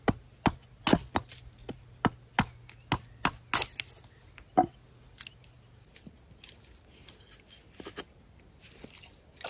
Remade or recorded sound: recorded